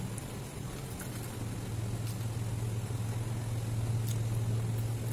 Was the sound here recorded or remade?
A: recorded